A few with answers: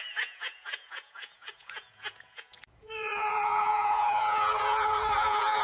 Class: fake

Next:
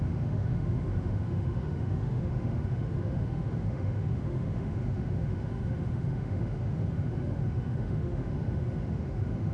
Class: fake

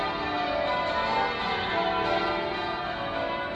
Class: real